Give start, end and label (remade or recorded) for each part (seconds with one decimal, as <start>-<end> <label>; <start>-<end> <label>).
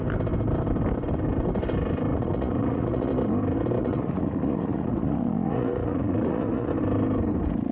0.0-2.1 recorded; 2.1-3.1 remade; 3.1-3.8 recorded; 3.8-6.7 remade; 6.7-7.7 recorded